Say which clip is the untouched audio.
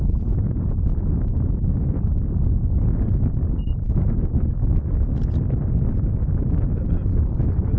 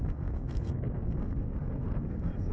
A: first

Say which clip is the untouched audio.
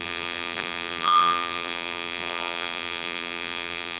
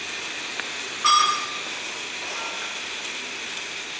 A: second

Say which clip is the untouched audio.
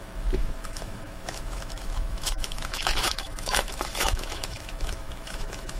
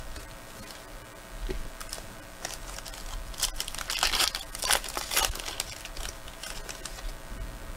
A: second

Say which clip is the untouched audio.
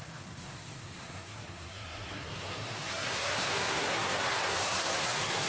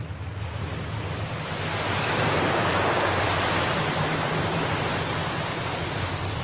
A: second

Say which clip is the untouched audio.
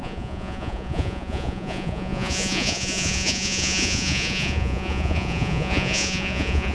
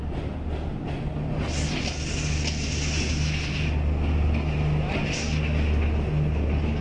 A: second